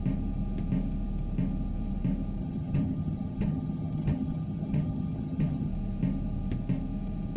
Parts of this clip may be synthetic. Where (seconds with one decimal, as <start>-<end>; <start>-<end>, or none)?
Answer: 2.4-5.7